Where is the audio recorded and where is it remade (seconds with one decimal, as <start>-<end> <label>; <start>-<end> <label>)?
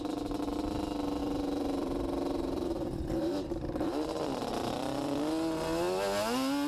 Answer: 0.0-1.2 recorded; 1.2-5.2 remade; 5.2-6.7 recorded